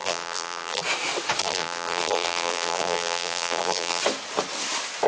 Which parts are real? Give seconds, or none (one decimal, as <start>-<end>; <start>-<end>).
0.8-1.4; 4.0-5.1